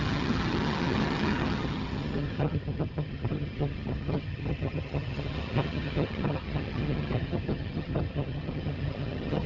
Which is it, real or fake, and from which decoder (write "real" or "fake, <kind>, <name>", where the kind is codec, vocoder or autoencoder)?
fake, vocoder, HiFi-GAN